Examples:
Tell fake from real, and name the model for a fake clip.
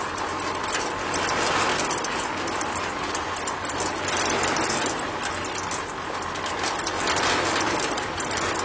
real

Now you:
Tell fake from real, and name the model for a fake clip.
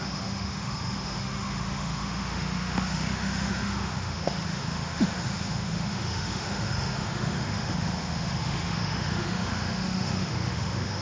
fake, autoencoder, DAC-VAE